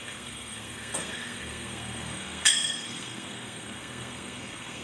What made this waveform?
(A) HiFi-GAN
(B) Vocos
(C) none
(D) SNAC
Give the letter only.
D